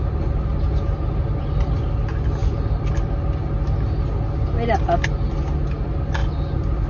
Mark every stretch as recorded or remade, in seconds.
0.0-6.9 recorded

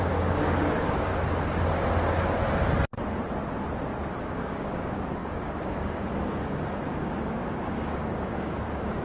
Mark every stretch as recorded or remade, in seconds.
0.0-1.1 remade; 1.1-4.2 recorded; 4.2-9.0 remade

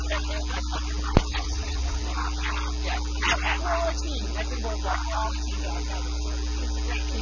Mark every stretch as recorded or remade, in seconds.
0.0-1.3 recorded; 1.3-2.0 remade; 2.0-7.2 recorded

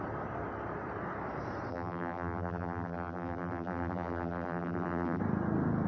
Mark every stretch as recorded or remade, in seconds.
0.0-1.7 recorded; 1.7-5.2 remade; 5.2-5.9 recorded